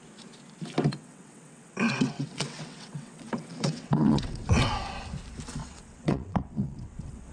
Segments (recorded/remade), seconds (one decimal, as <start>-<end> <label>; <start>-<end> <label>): 0.0-0.9 recorded; 0.9-4.7 remade; 4.7-5.6 recorded; 5.6-7.3 remade